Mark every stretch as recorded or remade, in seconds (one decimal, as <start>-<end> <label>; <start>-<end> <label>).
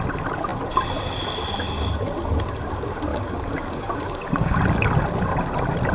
0.0-3.1 recorded; 3.1-4.6 remade; 4.6-5.9 recorded